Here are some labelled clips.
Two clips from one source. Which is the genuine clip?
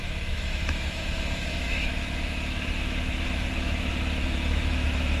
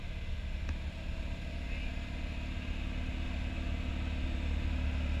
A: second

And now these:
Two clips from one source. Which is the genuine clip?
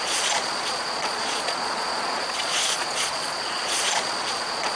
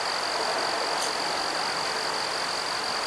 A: second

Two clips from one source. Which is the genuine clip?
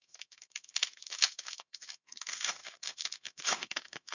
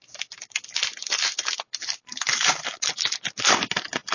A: second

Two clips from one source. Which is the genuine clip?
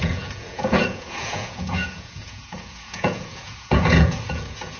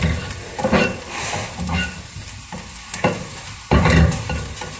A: second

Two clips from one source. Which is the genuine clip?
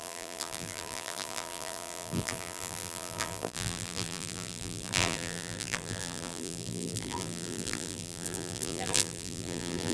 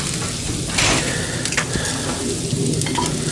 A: second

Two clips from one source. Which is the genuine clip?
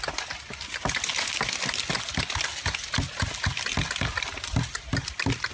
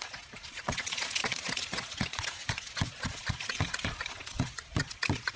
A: first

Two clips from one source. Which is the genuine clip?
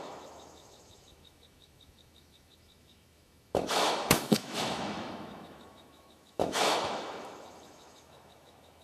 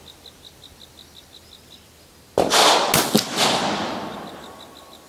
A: second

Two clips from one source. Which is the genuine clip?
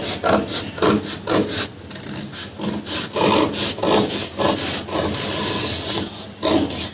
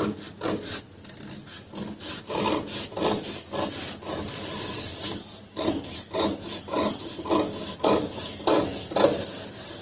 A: first